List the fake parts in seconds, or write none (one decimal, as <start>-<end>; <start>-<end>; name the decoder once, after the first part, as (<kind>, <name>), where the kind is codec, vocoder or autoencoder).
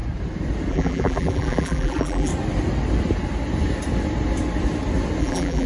0.7-2.3 (vocoder, BigVGAN v2); 5.2-5.7